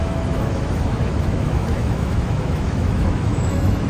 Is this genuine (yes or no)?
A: no